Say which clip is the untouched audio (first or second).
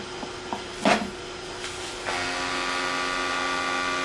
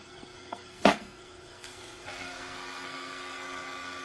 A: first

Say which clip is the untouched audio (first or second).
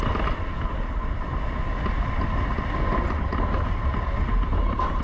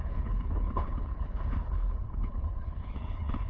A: first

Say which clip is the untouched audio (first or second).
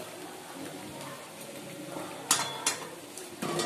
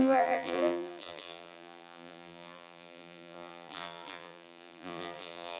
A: first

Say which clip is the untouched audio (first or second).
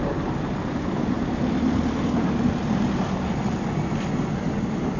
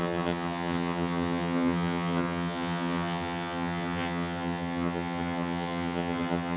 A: first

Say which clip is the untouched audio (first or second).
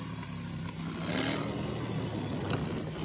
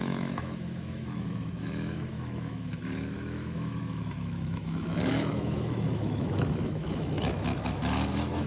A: first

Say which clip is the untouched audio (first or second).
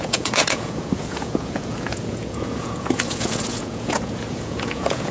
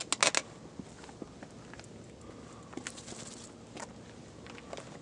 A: second